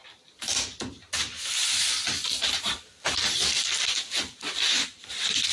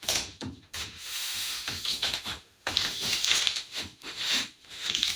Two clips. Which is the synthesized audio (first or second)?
second